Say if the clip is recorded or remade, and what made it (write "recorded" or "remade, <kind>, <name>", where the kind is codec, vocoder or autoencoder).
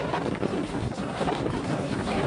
remade, codec, SNAC